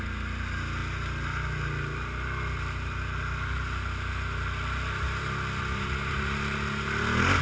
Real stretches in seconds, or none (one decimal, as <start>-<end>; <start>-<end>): 0.0-7.4